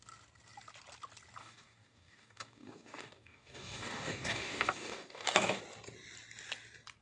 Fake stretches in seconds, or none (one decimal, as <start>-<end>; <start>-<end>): 1.4-5.6